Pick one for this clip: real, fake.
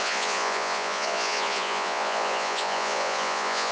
fake